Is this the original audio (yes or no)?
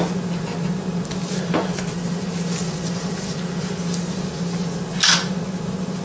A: yes